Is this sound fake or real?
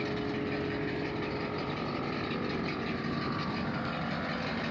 real